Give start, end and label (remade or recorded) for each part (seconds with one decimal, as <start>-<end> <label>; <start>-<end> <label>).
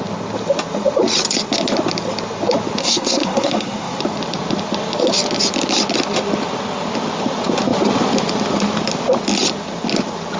0.0-2.8 recorded; 2.8-4.0 remade; 4.0-10.4 recorded